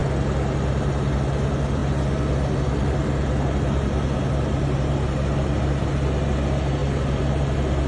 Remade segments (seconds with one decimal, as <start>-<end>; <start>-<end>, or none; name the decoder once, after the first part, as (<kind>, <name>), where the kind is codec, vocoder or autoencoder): none